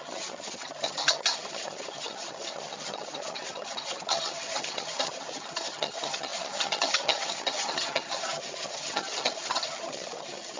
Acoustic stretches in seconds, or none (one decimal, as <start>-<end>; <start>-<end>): none